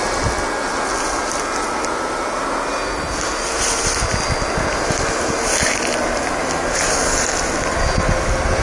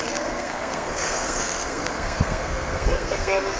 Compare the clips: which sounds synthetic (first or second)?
second